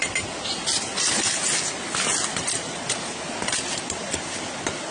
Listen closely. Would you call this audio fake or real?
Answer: real